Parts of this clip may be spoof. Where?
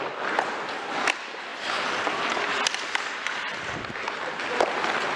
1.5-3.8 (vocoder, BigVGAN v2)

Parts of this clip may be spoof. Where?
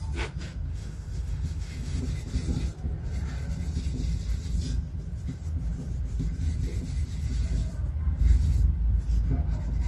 0.7-2.0 (autoencoder, DAC-VAE)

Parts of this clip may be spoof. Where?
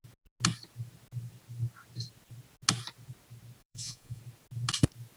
3.6-4.2 (vocoder, Vocos)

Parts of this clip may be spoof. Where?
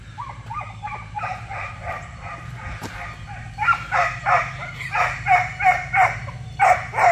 0.0-7.1 (vocoder, BigVGAN v2)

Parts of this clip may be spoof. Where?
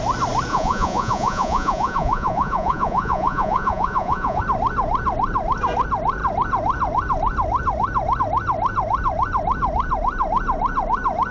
0.5-4.4 (vocoder, Vocos)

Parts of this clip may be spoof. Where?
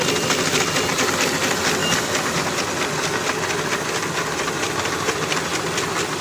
none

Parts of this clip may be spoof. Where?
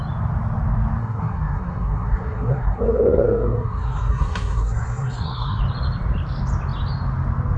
1.0-5.6 (codec, SNAC)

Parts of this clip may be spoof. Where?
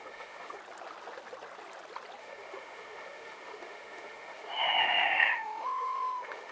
0.0-0.6 (autoencoder, DAC-VAE); 2.2-6.5